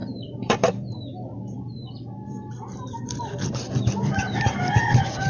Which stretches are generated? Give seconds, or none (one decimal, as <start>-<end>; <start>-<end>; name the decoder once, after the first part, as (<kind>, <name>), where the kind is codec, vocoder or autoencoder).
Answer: 0.0-3.2 (vocoder, BigVGAN v2)